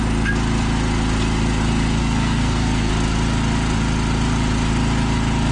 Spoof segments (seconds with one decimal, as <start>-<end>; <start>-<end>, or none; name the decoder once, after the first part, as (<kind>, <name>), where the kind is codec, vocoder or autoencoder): 2.0-2.9 (codec, SNAC)